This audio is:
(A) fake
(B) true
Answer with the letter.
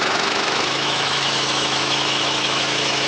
A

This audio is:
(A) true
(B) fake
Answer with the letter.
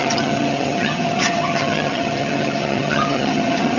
B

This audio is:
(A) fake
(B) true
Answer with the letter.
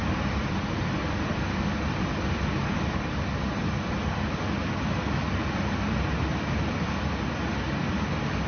B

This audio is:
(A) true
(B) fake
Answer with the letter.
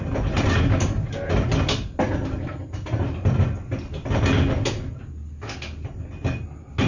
A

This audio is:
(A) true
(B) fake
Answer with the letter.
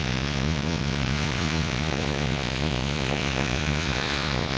B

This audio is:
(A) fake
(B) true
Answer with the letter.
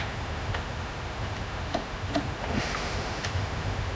A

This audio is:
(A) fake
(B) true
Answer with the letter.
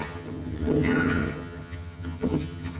A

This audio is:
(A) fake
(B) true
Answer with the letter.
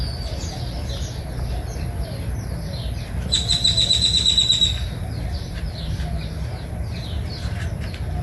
B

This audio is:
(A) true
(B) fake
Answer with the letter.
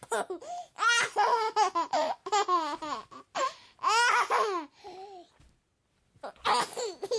A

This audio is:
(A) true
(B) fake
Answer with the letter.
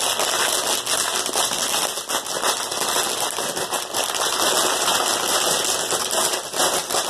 A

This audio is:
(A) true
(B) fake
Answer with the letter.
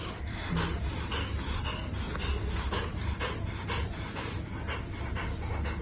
B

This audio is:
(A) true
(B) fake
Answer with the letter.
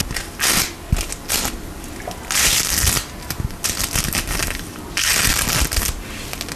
A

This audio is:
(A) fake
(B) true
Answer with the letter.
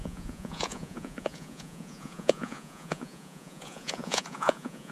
A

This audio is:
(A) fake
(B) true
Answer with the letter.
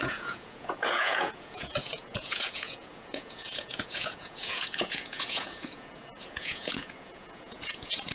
A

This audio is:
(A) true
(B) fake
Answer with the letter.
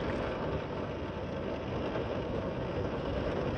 A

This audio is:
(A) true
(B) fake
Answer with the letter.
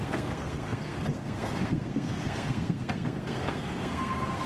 B